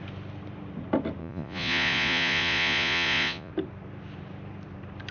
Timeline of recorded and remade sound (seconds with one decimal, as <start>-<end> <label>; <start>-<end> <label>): 0.0-1.2 recorded; 1.2-3.5 remade; 3.5-5.1 recorded